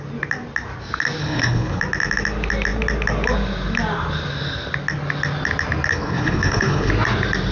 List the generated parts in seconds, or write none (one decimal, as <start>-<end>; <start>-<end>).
1.2-1.8; 5.9-6.9